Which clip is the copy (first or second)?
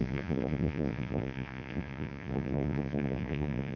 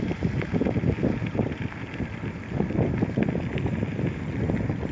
first